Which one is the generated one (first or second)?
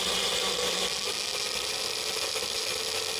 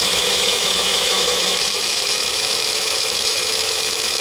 second